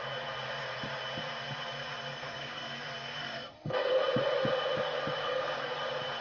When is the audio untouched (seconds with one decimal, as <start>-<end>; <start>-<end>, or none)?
0.0-2.1; 2.8-3.2; 3.9-5.2; 5.7-6.2